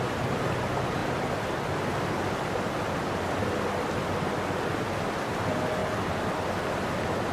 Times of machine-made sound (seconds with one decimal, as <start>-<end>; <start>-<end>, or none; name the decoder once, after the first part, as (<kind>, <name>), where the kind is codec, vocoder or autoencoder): none